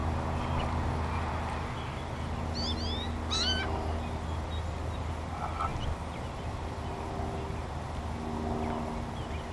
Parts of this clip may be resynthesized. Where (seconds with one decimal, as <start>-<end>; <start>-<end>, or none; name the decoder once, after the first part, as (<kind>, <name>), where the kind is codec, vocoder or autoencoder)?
none